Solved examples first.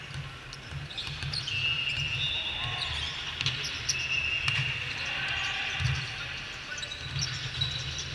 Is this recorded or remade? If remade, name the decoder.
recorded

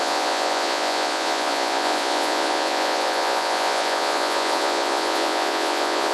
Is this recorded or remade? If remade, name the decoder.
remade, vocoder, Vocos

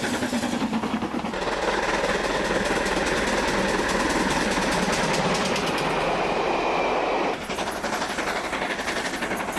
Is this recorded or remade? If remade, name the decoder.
recorded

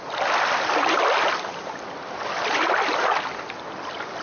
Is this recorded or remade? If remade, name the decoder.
recorded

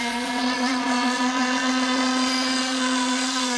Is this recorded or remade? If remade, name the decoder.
remade, vocoder, Vocos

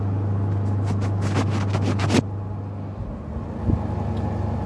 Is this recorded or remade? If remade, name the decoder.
recorded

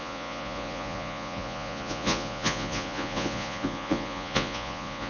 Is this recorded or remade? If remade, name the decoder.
remade, vocoder, Vocos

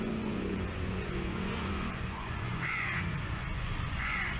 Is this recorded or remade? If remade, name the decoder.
remade, vocoder, Vocos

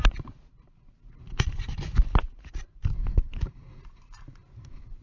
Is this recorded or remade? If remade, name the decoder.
recorded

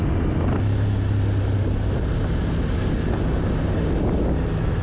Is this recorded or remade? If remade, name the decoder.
recorded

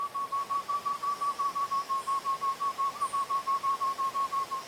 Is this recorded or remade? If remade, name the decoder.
recorded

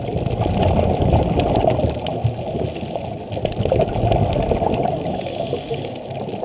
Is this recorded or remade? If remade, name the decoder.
recorded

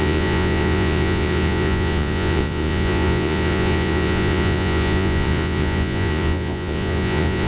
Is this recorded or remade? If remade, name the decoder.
remade, vocoder, Vocos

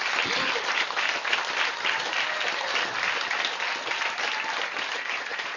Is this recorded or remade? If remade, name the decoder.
recorded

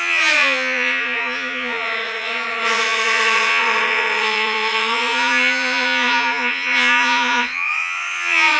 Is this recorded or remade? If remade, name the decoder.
remade, vocoder, Vocos